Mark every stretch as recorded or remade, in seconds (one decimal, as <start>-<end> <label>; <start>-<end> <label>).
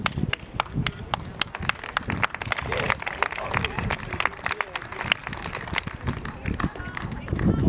0.0-7.7 recorded